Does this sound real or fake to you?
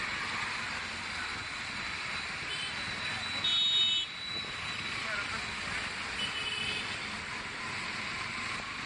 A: real